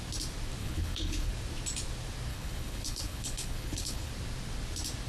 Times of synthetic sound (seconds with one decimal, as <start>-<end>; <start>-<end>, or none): 0.6-1.3; 2.3-4.1

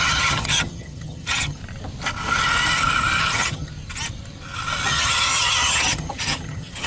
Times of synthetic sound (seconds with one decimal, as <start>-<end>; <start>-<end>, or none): 0.0-1.6; 3.2-3.7; 4.9-6.9

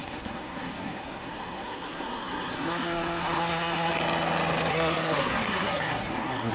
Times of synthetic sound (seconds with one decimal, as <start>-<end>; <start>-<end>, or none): 0.0-3.9; 4.7-6.5

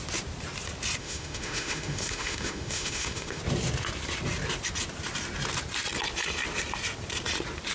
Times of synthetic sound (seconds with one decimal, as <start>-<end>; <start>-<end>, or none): 1.0-3.4